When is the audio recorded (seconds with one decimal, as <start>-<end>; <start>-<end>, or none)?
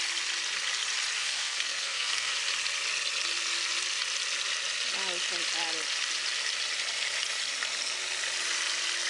0.0-1.2; 2.3-9.1